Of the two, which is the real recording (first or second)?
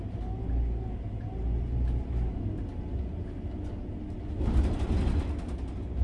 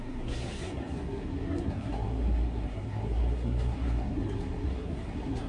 first